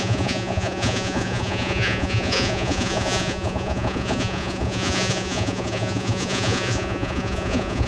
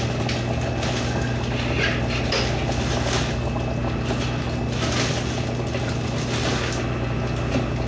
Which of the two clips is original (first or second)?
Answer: second